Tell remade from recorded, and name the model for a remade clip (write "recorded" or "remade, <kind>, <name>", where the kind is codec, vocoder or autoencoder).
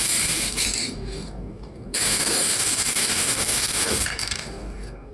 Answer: remade, codec, DAC